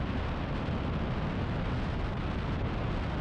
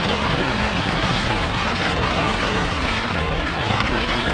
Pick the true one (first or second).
first